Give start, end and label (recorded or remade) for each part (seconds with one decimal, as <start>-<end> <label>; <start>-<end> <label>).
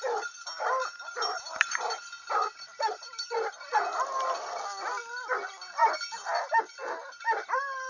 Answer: 0.0-0.8 recorded; 0.8-3.7 remade; 3.7-7.9 recorded